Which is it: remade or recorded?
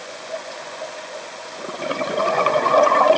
remade